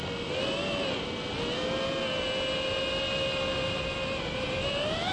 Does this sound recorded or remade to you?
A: recorded